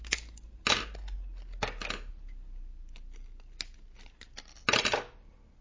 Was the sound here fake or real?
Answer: real